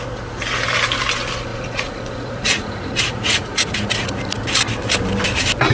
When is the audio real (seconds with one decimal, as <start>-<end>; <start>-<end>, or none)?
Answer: 0.0-1.5; 4.2-5.7